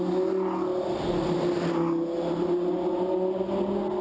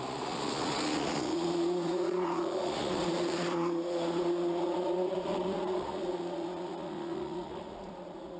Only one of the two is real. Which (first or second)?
first